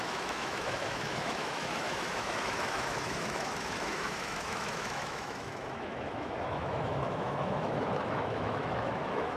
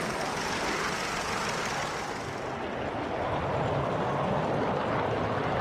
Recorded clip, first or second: second